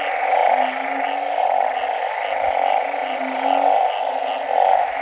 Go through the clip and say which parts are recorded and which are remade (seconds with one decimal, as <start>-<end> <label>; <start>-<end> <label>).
0.0-5.0 recorded